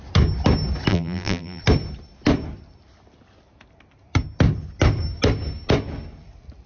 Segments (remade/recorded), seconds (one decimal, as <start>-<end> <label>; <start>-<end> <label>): 0.0-0.9 recorded; 0.9-1.6 remade; 1.6-6.7 recorded

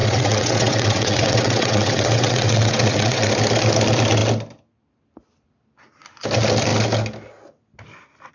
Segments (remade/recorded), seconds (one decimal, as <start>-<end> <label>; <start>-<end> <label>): 0.0-3.3 remade; 3.3-8.3 recorded

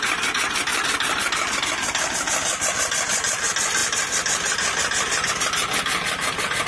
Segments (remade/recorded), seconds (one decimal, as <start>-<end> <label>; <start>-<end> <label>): 0.0-6.7 recorded

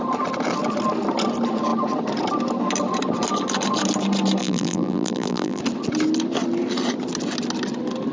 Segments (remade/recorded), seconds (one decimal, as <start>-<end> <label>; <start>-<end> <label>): 0.0-4.4 recorded; 4.4-5.6 remade; 5.6-8.1 recorded

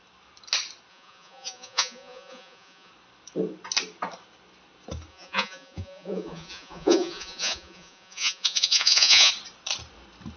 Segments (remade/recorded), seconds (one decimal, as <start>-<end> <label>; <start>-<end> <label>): 0.0-0.9 recorded; 0.9-2.9 remade; 2.9-5.1 recorded; 5.1-9.3 remade; 9.3-10.4 recorded

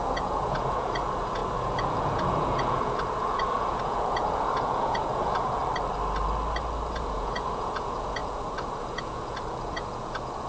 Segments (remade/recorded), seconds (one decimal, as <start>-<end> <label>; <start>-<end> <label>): 0.0-5.6 remade; 5.6-6.9 recorded; 6.9-10.5 remade

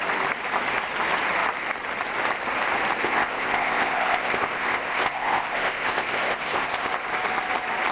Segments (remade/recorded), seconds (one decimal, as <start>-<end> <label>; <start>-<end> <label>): 0.0-3.0 recorded; 3.0-6.9 remade; 6.9-7.9 recorded

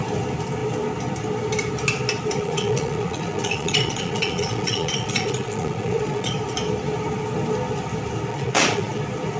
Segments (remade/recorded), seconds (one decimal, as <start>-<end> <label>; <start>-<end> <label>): 0.0-2.4 recorded; 2.4-6.3 remade; 6.3-8.3 recorded; 8.3-9.0 remade; 9.0-9.4 recorded